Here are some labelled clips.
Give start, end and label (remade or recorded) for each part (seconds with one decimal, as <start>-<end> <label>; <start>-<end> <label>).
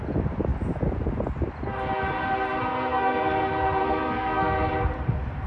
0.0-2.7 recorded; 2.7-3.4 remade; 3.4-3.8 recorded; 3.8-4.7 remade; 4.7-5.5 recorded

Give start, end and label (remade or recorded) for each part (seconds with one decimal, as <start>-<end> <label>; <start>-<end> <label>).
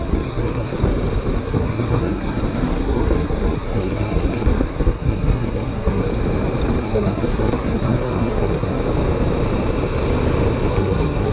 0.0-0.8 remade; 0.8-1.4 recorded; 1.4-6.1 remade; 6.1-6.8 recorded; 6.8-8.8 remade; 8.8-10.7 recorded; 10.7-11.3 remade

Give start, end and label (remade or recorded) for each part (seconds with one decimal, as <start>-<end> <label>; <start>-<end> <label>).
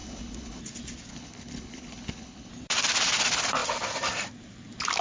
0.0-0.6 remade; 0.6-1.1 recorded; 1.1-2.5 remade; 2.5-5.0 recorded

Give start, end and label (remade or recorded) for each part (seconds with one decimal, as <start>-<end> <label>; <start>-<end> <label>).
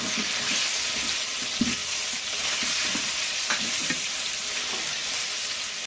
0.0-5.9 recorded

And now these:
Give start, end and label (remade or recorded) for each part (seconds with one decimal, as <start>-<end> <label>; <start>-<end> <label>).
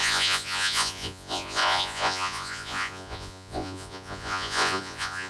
0.0-5.3 remade